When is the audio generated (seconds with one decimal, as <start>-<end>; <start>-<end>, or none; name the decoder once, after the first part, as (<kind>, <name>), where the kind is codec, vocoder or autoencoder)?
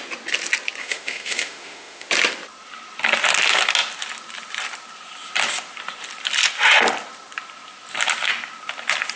0.8-2.1 (autoencoder, DAC-VAE)